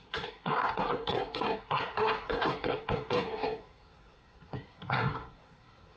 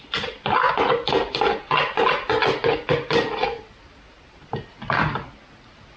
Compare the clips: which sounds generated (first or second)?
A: first